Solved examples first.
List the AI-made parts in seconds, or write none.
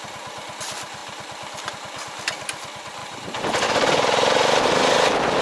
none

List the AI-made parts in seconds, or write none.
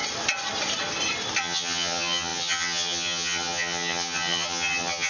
1.4-5.1 (vocoder, HiFi-GAN)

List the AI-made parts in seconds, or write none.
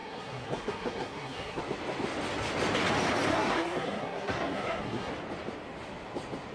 0.0-1.6 (codec, SNAC); 3.3-5.1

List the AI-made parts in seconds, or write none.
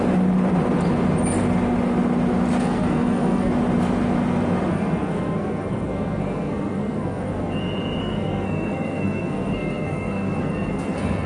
2.6-3.5 (codec, SNAC); 4.7-7.6; 8.0-11.3